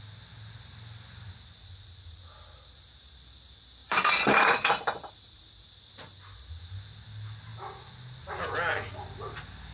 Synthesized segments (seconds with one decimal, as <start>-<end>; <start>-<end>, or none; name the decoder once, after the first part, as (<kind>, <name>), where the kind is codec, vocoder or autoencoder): 3.8-5.4 (vocoder, BigVGAN v2)

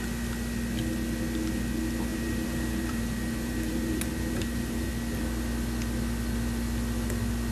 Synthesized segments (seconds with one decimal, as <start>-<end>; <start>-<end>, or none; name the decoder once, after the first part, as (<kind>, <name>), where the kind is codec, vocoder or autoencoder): 2.1-4.9 (vocoder, BigVGAN v2)

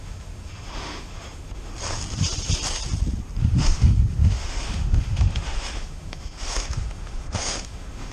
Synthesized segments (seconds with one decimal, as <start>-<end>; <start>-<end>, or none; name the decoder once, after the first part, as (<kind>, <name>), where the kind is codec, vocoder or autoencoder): 0.0-1.7 (autoencoder, DAC-VAE); 3.4-8.1

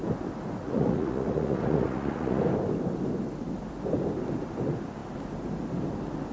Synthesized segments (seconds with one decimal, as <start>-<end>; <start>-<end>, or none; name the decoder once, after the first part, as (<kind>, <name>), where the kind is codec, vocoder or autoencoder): 0.6-2.4 (vocoder, Vocos)